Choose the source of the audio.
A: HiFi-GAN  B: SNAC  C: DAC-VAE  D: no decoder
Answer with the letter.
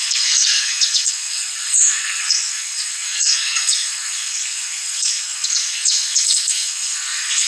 B